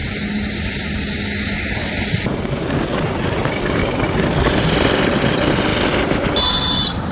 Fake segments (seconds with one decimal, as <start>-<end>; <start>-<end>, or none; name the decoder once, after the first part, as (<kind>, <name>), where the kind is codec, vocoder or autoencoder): none